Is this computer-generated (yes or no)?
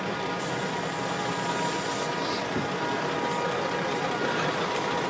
no